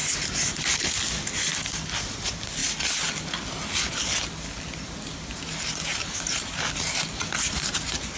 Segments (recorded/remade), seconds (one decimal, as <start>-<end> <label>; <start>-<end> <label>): 0.0-8.2 recorded